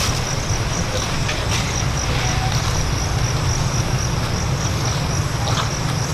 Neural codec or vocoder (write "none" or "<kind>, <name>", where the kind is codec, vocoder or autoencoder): none